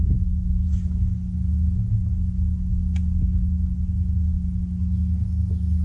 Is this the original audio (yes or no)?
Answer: yes